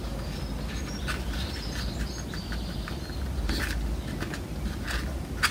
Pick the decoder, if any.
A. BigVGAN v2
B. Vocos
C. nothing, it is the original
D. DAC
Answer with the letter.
C